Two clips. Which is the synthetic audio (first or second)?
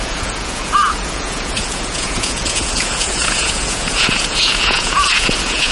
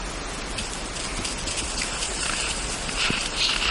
first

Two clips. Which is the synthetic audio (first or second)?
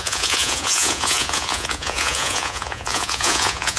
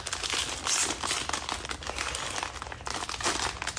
first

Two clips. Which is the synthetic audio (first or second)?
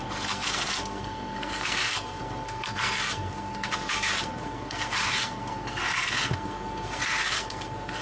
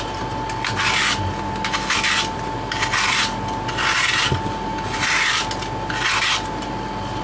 first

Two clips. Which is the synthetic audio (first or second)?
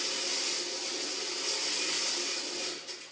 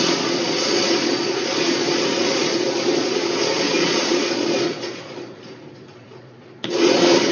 second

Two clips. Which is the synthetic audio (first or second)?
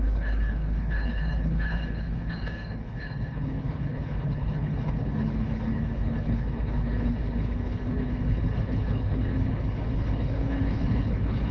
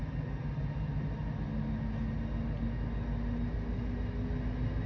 first